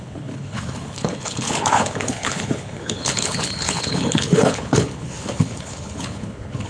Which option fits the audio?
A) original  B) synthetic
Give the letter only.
B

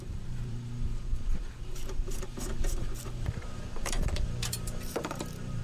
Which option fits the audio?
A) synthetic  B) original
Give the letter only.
A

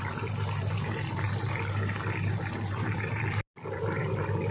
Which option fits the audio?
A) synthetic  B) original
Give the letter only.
B